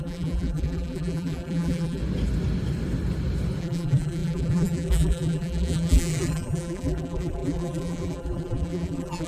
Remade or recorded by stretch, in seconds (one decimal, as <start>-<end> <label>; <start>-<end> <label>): 0.0-2.0 remade; 2.0-3.6 recorded; 3.6-9.3 remade